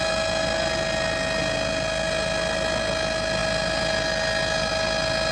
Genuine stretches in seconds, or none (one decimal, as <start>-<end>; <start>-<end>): 0.0-5.3